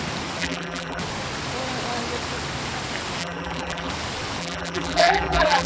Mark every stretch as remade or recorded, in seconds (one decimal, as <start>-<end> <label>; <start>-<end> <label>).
0.0-0.4 recorded; 0.4-1.0 remade; 1.0-3.2 recorded; 3.2-3.9 remade; 3.9-4.4 recorded; 4.4-5.7 remade